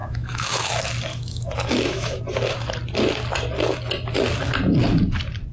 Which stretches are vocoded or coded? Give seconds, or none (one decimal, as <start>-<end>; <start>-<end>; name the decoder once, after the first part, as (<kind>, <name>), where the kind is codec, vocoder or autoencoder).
0.0-0.7 (autoencoder, DAC-VAE); 1.1-2.2